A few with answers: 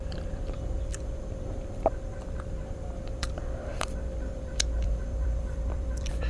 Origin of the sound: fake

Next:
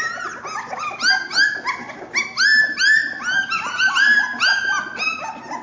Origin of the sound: real